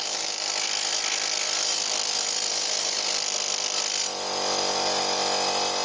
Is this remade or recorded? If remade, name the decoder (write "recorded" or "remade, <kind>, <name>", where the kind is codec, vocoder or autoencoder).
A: recorded